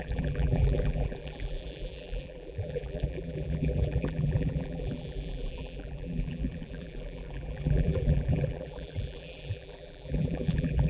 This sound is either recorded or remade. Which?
remade